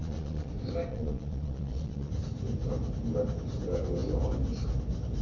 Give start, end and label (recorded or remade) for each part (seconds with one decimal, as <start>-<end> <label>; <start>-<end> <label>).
0.0-0.5 remade; 0.5-0.9 recorded; 0.9-2.1 remade; 2.1-5.2 recorded